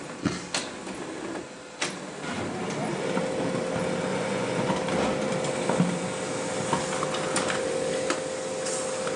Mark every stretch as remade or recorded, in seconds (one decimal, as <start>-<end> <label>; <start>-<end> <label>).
0.0-4.1 recorded; 4.1-4.7 remade; 4.7-9.2 recorded

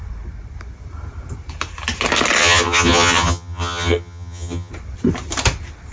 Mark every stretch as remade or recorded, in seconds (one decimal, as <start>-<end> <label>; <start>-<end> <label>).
0.0-2.4 recorded; 2.4-4.7 remade; 4.7-5.9 recorded

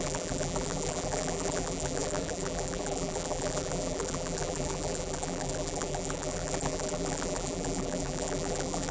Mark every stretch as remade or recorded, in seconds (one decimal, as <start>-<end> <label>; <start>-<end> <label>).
0.0-8.9 remade

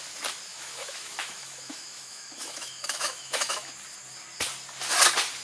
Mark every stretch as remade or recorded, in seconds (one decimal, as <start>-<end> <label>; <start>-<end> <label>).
0.0-0.5 recorded; 0.5-3.7 remade; 3.7-5.4 recorded

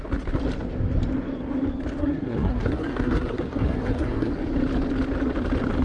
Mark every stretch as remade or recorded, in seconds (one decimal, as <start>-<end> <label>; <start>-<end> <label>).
0.0-2.0 recorded; 2.0-4.3 remade; 4.3-5.8 recorded